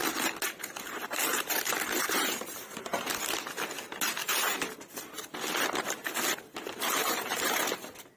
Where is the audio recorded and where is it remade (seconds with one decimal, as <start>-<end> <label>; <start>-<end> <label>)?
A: 0.0-2.0 recorded; 2.0-3.1 remade; 3.1-4.2 recorded; 4.2-4.8 remade; 4.8-7.0 recorded; 7.0-7.6 remade; 7.6-8.2 recorded